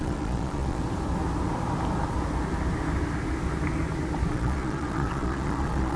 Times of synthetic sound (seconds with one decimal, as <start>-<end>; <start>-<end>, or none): 0.0-0.8; 4.3-6.0